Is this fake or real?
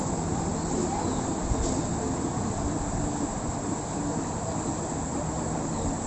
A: real